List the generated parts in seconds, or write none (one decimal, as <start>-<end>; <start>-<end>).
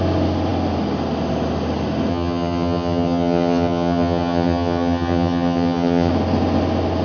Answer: 2.1-6.1